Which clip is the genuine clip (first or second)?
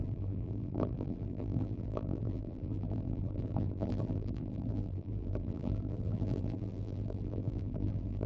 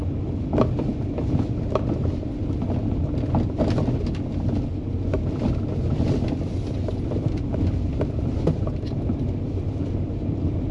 second